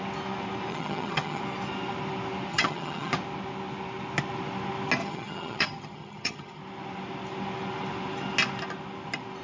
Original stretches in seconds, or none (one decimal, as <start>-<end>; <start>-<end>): 0.0-0.7; 1.4-2.5; 3.1-5.0; 6.6-9.4